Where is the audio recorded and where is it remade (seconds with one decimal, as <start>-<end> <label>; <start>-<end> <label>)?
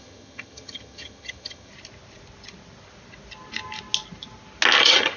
0.0-1.7 remade; 1.7-4.8 recorded; 4.8-5.2 remade